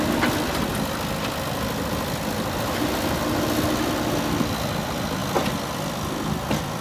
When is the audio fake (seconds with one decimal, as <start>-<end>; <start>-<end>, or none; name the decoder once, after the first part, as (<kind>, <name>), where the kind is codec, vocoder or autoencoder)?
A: none

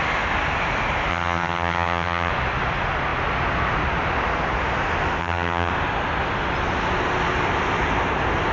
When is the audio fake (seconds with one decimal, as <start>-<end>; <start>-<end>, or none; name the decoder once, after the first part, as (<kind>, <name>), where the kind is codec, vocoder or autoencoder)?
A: 1.1-2.3 (vocoder, HiFi-GAN); 5.2-5.7